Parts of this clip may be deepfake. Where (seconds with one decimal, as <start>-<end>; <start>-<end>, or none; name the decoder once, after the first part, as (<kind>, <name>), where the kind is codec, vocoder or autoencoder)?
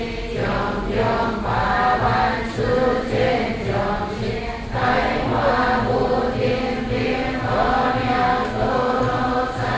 8.3-9.0 (codec, SNAC)